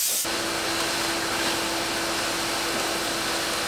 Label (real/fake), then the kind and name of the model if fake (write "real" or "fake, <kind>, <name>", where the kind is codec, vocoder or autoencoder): real